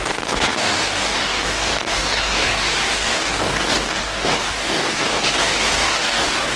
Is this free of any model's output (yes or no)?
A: no